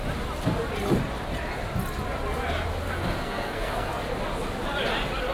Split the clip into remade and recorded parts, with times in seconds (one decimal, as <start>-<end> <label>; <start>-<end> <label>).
0.0-3.2 recorded; 3.2-3.9 remade; 3.9-5.3 recorded